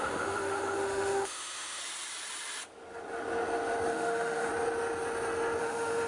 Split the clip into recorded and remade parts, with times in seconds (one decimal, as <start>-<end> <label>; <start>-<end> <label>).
0.0-1.8 remade; 1.8-3.9 recorded; 3.9-4.5 remade; 4.5-5.6 recorded; 5.6-6.1 remade